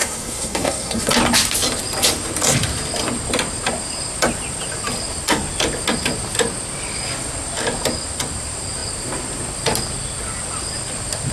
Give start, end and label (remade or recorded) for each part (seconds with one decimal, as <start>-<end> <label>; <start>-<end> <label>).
0.0-1.1 remade; 1.1-11.3 recorded